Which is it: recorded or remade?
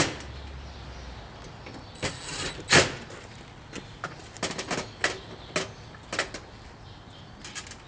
recorded